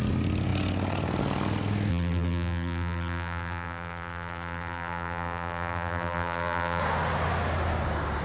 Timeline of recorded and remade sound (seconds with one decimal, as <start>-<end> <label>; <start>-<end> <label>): 0.0-1.9 recorded; 1.9-6.8 remade; 6.8-8.2 recorded